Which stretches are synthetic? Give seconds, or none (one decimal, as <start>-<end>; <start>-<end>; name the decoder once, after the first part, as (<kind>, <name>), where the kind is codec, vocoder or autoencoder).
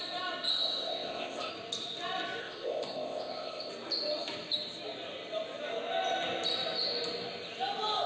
0.5-1.5 (codec, ZipCodec); 2.4-3.7